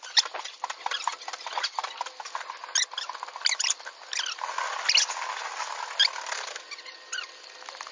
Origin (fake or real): real